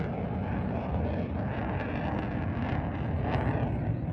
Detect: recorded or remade recorded